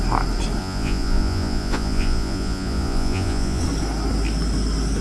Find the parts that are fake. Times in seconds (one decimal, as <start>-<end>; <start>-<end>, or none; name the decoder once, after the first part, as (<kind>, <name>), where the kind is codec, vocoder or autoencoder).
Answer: 0.6-3.6 (vocoder, Vocos)